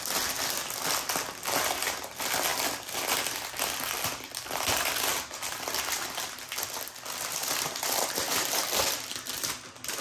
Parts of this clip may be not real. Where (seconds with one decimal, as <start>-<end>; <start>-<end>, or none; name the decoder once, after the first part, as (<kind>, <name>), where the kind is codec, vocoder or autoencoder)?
7.4-8.8 (vocoder, BigVGAN v2)